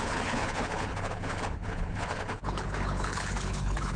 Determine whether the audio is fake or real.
fake